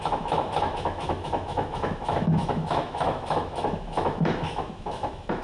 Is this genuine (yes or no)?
no